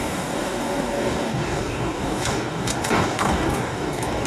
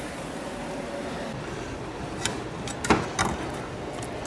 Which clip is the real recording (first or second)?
second